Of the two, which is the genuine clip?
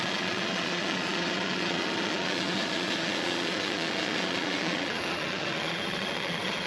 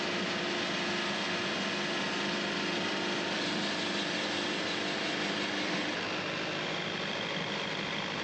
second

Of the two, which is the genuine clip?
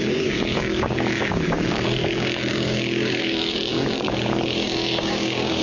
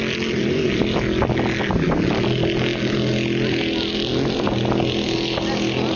second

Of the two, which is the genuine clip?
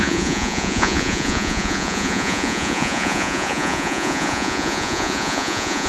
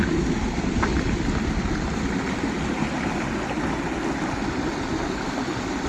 second